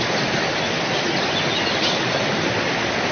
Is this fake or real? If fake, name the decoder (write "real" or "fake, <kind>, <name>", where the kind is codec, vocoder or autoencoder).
real